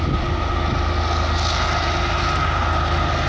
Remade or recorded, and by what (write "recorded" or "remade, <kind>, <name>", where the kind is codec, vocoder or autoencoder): recorded